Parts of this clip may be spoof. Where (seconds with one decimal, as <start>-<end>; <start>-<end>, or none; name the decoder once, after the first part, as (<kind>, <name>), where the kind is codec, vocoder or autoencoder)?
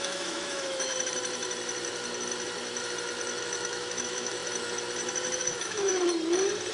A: 0.0-0.9 (autoencoder, DAC-VAE); 3.4-4.4; 5.4-5.9